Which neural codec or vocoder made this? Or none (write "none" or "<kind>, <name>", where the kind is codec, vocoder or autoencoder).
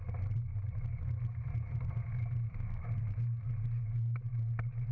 none